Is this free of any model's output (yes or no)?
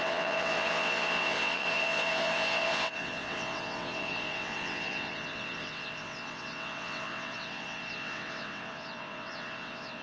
no